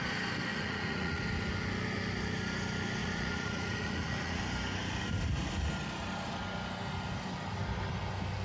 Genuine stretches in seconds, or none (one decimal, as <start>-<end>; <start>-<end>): 0.0-0.5; 1.2-3.0; 4.4-8.4